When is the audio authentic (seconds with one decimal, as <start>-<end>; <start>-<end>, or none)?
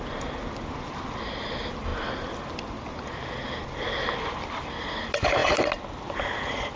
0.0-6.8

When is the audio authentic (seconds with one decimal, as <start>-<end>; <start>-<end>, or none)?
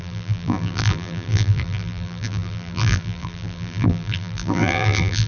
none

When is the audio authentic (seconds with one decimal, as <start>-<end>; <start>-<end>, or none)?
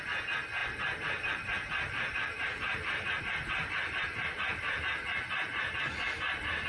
0.0-0.6; 3.2-6.7